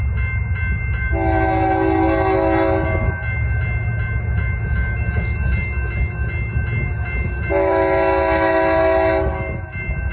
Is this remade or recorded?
recorded